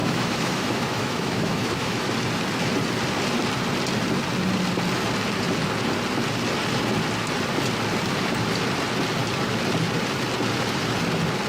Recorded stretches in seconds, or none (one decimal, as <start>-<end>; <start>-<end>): 2.1-11.5